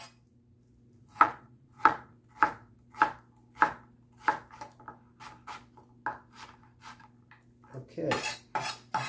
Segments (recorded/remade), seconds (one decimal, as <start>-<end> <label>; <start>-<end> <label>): 0.0-1.0 recorded; 1.0-2.1 remade; 2.1-9.1 recorded